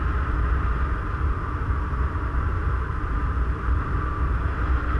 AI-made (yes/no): no